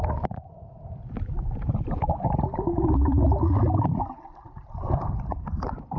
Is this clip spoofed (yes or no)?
yes